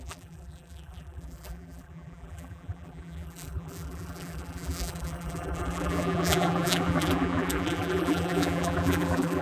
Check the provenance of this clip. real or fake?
fake